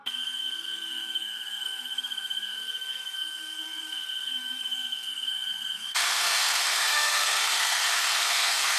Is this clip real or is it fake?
fake